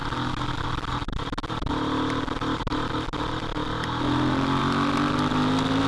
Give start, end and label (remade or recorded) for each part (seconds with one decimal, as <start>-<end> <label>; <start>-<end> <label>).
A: 0.0-5.9 recorded